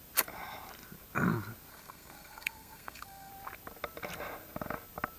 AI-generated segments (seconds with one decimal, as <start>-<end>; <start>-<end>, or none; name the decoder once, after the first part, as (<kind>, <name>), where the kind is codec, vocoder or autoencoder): 1.7-3.3 (codec, SNAC)